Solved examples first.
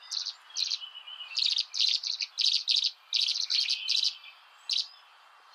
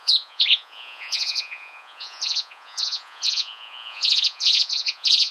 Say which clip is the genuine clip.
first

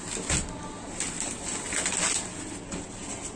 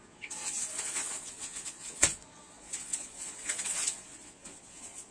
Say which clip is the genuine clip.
first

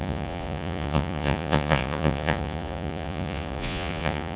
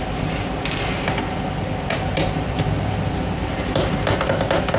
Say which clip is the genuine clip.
second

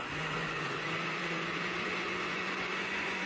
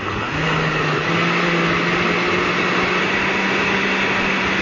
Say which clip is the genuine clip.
second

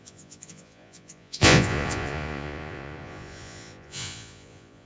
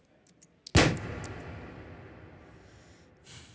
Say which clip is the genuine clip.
second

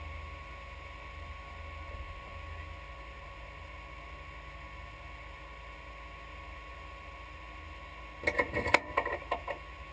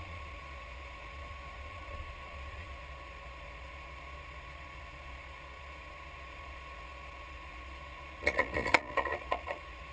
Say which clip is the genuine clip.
first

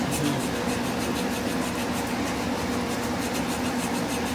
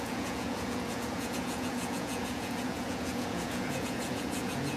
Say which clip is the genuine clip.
first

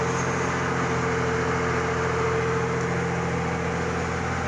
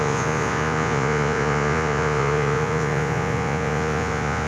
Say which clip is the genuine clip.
first